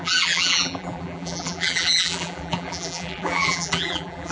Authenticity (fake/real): fake